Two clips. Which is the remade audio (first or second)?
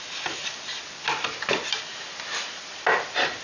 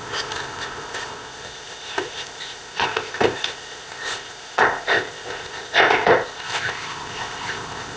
second